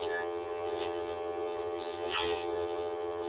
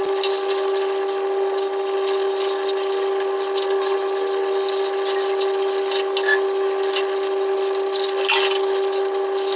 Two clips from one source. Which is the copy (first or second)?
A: first